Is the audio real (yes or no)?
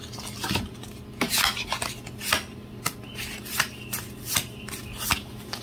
yes